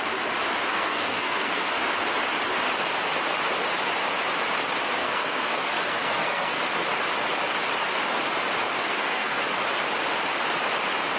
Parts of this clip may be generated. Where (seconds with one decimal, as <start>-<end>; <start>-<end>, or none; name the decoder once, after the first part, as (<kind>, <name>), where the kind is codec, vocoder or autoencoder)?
0.7-1.7 (codec, SNAC); 5.0-6.6; 8.8-9.4